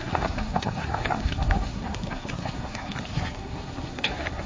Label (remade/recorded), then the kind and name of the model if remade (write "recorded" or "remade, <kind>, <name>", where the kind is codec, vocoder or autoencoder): remade, codec, SNAC